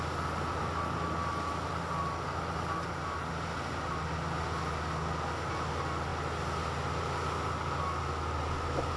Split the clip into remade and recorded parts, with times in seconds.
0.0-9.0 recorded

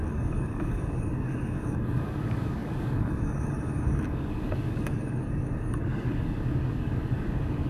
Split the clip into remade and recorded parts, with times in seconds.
0.0-7.7 remade

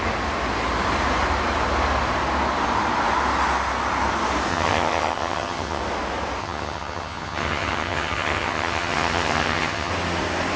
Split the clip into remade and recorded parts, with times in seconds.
0.0-4.5 recorded; 4.5-5.8 remade; 5.8-6.4 recorded; 6.4-9.9 remade; 9.9-10.6 recorded